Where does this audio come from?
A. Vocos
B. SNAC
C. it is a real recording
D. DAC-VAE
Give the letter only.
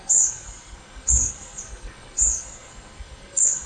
B